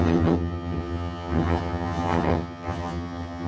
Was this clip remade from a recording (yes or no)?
yes